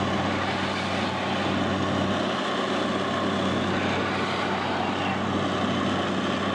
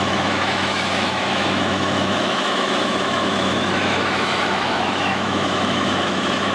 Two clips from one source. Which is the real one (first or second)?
first